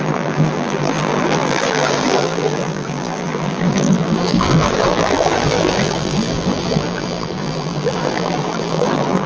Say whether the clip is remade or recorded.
remade